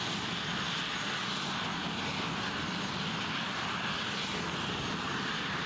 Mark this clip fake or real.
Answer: real